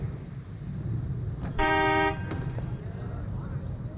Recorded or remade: remade